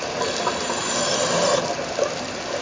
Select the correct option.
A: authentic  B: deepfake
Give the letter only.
A